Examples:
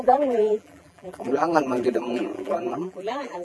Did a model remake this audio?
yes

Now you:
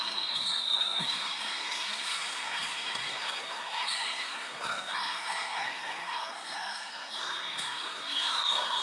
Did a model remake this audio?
yes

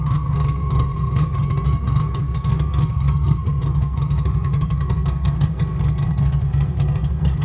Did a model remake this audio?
yes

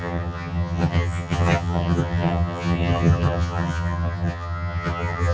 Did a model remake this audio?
yes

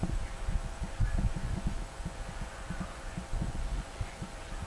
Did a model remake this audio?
yes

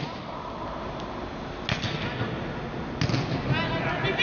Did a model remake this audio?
no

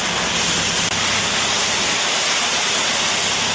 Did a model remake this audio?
no